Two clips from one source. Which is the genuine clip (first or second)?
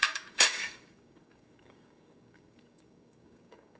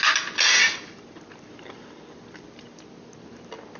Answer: second